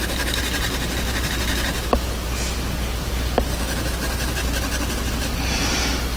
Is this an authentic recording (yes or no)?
yes